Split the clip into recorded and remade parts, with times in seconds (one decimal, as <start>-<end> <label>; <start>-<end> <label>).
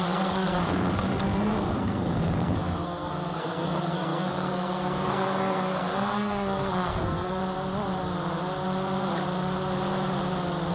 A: 0.0-7.4 remade; 7.4-10.7 recorded